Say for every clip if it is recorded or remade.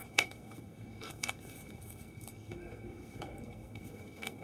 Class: remade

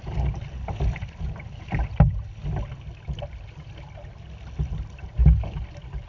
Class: recorded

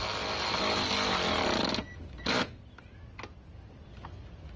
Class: recorded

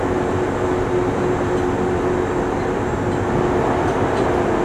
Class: recorded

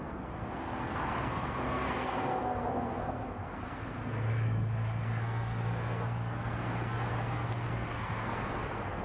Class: remade